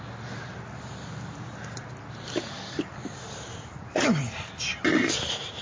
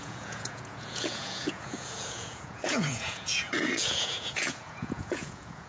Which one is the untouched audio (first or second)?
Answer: first